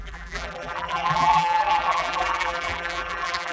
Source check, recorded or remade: remade